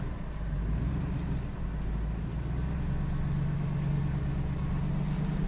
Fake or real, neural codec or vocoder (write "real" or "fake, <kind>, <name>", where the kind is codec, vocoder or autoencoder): real